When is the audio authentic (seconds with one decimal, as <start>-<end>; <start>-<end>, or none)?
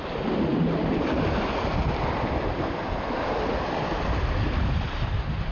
0.0-5.5